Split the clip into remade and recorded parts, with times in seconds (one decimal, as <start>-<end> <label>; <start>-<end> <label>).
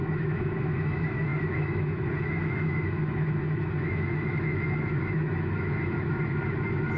0.0-7.0 remade